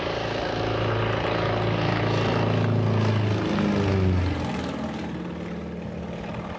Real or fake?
real